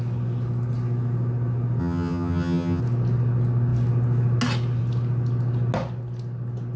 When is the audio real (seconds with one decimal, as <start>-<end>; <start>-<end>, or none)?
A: 0.0-1.8; 2.8-6.8